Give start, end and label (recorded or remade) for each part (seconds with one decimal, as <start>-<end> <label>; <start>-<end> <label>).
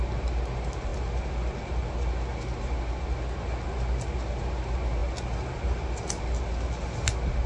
0.0-7.5 recorded